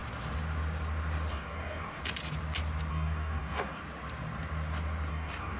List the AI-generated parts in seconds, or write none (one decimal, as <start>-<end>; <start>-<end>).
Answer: 1.3-2.0; 2.9-3.8; 5.1-5.6